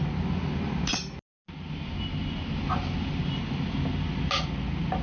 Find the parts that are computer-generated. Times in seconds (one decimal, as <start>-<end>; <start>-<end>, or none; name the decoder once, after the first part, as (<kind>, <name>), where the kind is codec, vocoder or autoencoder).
none